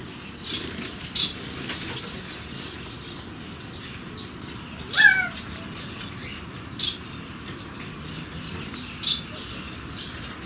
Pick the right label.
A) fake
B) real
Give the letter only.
B